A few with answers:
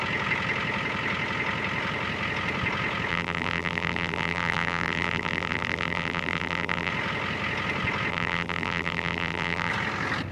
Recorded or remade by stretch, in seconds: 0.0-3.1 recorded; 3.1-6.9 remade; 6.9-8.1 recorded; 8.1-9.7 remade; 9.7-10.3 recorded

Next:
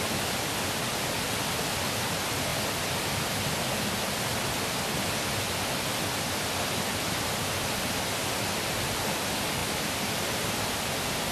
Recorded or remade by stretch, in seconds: 0.0-11.3 recorded

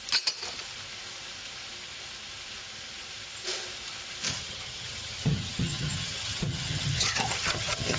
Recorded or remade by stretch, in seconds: 0.0-4.3 recorded; 4.3-8.0 remade

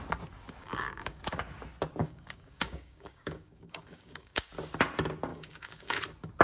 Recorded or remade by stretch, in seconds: 0.0-0.6 recorded; 0.6-1.2 remade; 1.2-2.0 recorded; 2.0-4.5 remade; 4.5-5.3 recorded; 5.3-6.0 remade; 6.0-6.4 recorded